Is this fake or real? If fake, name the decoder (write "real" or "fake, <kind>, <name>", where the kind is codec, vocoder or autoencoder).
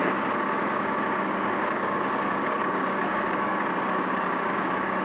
fake, codec, DAC